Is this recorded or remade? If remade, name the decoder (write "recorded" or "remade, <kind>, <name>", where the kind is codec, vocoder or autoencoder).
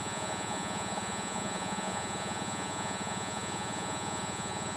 remade, vocoder, Vocos